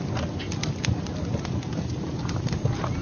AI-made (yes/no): no